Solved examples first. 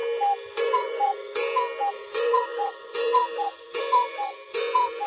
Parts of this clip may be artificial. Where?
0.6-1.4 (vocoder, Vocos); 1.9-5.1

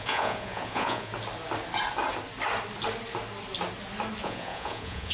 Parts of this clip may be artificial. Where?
0.0-1.1 (vocoder, Vocos); 4.2-5.1

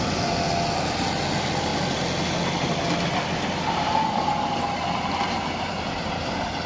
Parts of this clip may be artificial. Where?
none